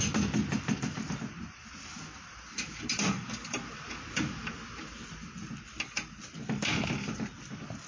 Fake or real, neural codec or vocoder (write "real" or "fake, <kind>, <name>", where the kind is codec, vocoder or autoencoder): real